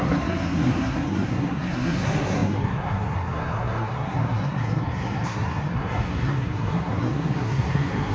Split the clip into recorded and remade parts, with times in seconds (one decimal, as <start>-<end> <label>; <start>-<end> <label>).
0.0-8.1 remade